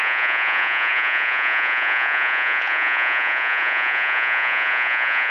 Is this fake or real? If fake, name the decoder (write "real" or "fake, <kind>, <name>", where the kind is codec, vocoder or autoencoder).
fake, vocoder, Vocos